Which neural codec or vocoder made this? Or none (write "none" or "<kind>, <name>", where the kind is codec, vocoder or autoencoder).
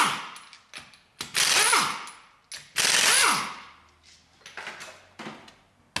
none